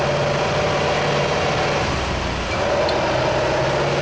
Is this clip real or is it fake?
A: real